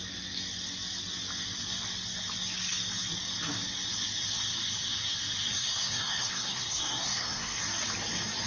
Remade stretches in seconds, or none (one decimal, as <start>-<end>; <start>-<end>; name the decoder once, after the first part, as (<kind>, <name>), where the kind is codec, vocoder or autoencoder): 5.5-7.6 (codec, SNAC)